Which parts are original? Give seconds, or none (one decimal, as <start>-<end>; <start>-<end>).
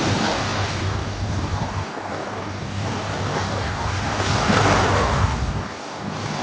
none